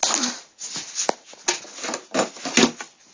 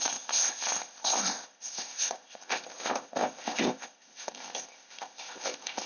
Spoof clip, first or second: second